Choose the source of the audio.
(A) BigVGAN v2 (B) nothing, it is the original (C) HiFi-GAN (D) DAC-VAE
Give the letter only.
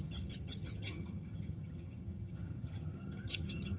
C